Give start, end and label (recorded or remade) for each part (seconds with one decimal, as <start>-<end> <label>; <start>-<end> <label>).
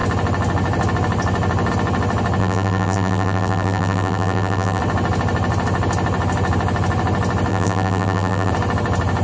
0.0-2.4 recorded; 2.4-4.8 remade; 4.8-7.5 recorded; 7.5-8.5 remade; 8.5-9.2 recorded